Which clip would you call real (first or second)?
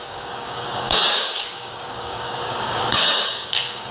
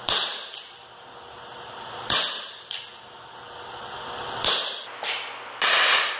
second